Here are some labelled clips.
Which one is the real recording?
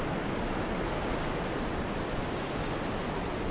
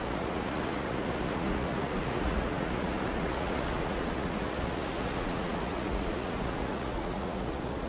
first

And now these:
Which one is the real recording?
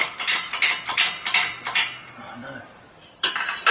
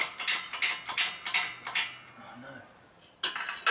second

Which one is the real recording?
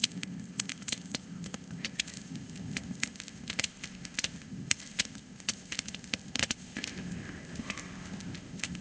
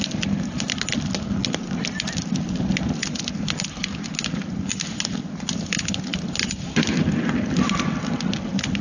second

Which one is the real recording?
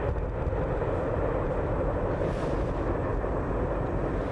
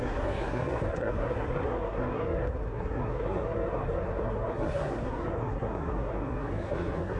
first